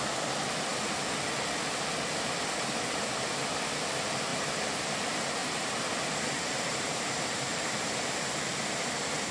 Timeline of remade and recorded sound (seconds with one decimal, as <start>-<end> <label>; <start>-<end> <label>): 0.0-4.3 recorded; 4.3-4.8 remade; 4.8-5.4 recorded; 5.4-8.4 remade; 8.4-9.3 recorded